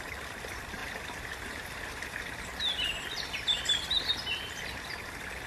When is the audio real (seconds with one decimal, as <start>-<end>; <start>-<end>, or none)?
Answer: 0.0-5.5